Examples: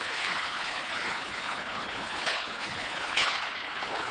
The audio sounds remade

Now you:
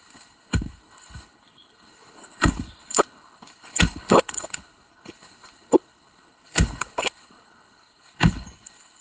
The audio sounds remade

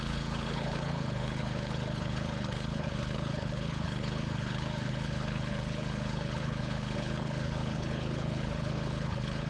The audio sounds remade